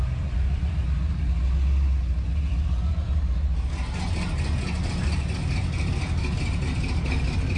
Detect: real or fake real